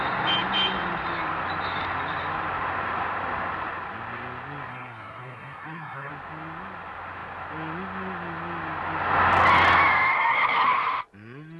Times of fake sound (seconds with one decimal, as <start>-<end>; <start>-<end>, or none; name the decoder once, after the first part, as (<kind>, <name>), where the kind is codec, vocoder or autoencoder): 4.7-6.1 (codec, SNAC)